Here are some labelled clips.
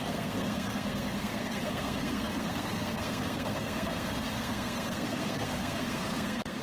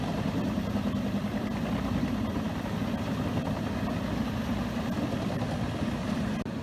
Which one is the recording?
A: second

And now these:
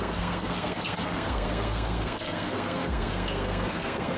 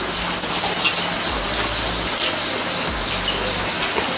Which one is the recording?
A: second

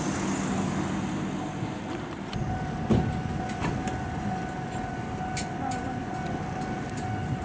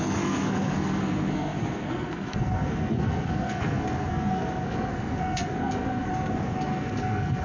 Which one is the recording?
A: first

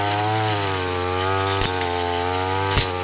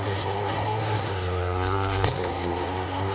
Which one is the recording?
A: first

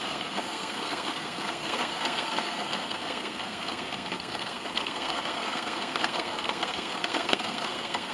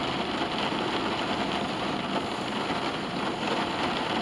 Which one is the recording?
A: second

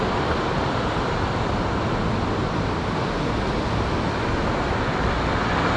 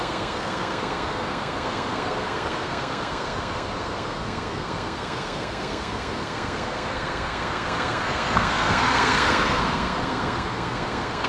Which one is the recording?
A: first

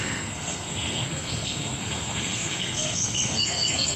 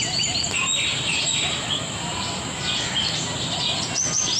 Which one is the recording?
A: second